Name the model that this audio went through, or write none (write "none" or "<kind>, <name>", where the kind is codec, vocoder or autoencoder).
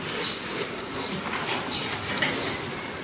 none